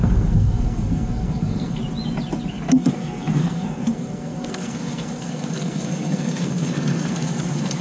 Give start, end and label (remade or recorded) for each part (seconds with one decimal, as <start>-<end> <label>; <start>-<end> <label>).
0.0-1.8 remade; 1.8-2.5 recorded; 2.5-7.8 remade